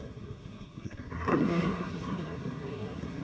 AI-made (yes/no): yes